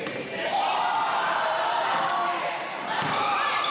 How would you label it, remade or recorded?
remade